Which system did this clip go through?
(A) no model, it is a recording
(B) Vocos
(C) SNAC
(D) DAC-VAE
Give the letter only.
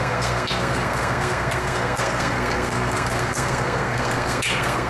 C